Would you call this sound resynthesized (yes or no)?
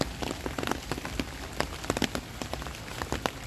no